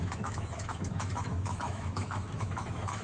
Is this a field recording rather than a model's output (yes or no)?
no